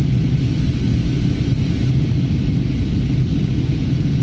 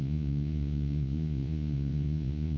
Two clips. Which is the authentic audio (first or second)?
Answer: first